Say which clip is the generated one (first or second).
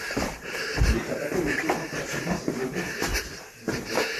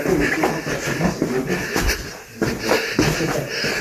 first